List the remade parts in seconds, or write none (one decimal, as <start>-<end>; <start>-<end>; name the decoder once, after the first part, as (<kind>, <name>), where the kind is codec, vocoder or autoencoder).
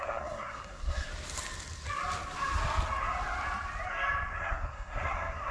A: 0.0-1.1 (codec, SNAC); 4.4-5.5